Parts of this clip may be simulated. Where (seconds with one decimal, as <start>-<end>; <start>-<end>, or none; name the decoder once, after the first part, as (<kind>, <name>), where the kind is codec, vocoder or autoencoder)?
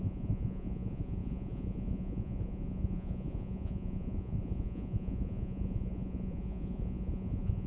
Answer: 0.0-7.7 (vocoder, Vocos)